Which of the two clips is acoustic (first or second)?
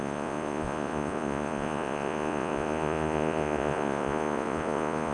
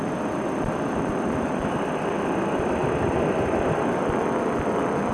second